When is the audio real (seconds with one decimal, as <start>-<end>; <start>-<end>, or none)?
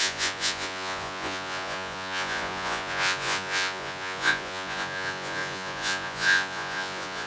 none